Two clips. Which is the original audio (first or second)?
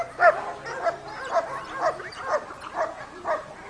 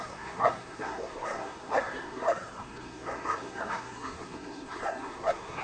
first